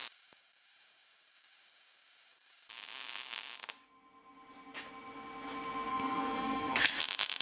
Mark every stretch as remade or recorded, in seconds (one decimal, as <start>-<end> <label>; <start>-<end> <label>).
0.0-5.9 recorded; 5.9-7.0 remade; 7.0-7.4 recorded